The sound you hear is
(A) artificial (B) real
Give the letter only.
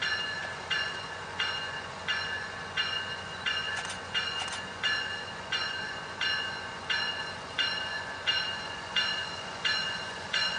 A